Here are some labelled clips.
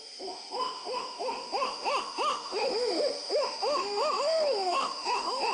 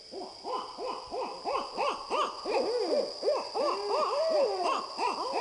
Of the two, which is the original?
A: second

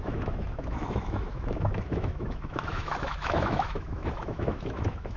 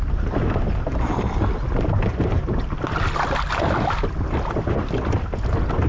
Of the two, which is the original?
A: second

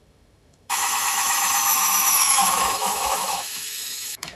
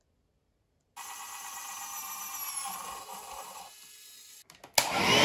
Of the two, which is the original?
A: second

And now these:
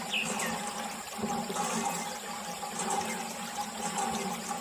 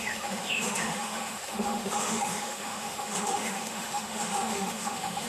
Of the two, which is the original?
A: first